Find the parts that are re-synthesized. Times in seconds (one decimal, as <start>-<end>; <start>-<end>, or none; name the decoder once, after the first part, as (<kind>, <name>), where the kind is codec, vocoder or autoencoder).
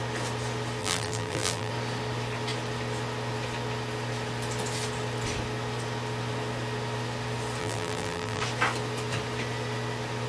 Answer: 0.8-1.7 (vocoder, BigVGAN v2); 7.6-8.4